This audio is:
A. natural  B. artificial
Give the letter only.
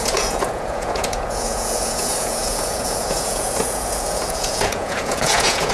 B